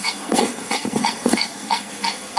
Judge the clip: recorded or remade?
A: remade